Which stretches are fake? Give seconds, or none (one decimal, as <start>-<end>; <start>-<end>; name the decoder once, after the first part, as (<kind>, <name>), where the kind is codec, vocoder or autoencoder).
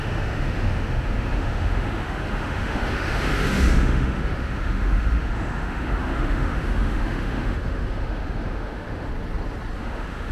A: 0.0-9.1 (autoencoder, DAC-VAE); 9.8-10.3